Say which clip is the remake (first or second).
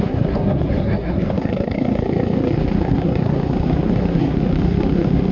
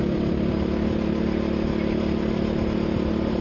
first